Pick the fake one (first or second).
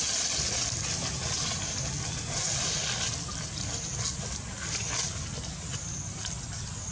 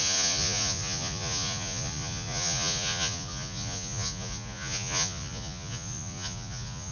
second